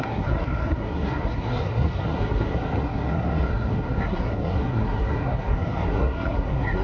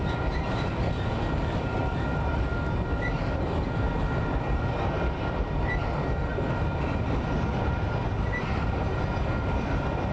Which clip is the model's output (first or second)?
first